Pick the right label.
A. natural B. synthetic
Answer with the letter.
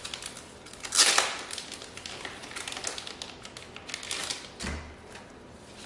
A